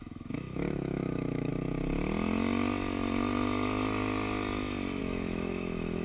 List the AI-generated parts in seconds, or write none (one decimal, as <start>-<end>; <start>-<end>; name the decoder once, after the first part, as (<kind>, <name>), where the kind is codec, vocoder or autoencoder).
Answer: 0.0-1.5 (autoencoder, DAC-VAE); 5.0-6.0